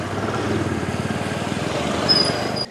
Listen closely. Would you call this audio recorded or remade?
recorded